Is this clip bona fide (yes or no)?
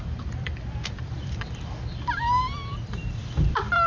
no